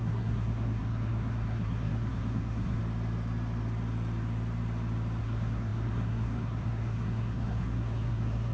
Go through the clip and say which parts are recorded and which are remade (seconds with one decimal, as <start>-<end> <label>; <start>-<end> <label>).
0.0-2.8 remade; 2.8-5.2 recorded; 5.2-8.5 remade